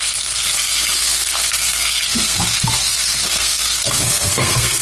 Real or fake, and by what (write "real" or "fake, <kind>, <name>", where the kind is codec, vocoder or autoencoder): fake, codec, SNAC